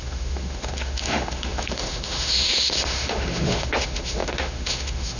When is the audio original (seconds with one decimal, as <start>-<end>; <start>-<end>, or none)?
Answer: none